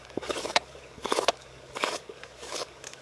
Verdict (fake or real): fake